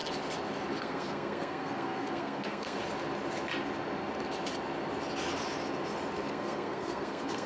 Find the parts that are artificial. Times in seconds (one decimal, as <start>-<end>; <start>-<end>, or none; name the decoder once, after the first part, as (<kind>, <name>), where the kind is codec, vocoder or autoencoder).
0.8-2.8 (codec, SNAC); 6.3-7.5